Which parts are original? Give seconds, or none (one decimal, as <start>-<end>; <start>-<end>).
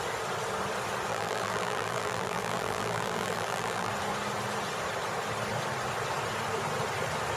0.0-1.1; 3.9-7.4